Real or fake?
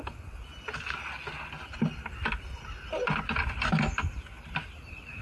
real